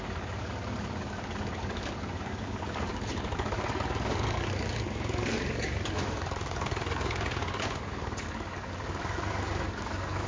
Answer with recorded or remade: remade